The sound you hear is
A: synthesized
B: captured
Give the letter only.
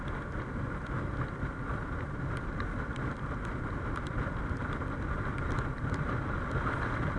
B